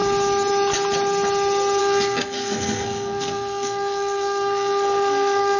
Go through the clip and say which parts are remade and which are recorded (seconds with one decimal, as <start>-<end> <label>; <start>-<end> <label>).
0.0-1.8 recorded; 1.8-5.6 remade